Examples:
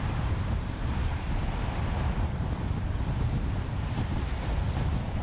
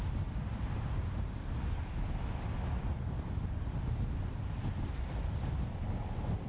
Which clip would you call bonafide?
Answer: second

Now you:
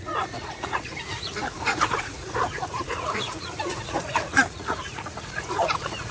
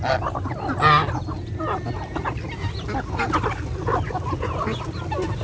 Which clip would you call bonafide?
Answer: second